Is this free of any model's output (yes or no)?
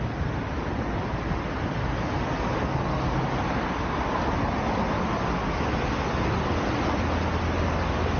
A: yes